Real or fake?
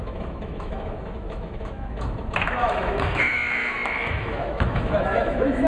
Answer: fake